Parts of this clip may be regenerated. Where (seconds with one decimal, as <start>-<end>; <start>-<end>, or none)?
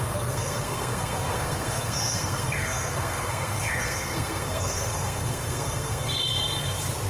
0.0-6.2